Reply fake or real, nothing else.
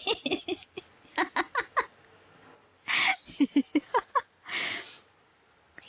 real